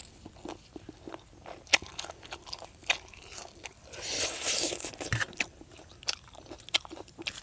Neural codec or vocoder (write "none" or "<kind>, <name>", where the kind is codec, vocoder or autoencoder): none